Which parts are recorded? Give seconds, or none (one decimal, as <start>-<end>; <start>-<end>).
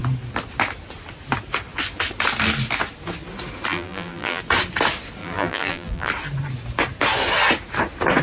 0.0-3.7; 4.4-5.2; 6.1-8.2